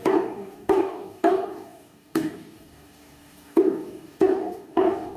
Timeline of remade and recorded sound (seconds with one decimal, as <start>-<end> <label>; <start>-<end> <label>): 0.0-5.2 remade